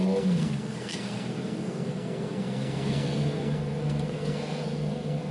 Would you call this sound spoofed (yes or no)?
yes